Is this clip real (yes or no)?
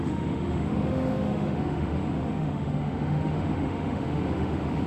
no